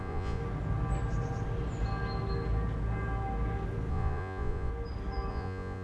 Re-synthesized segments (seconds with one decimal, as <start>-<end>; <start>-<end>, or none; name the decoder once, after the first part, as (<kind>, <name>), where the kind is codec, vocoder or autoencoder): 0.0-0.4 (vocoder, Vocos); 3.9-4.7; 5.3-5.8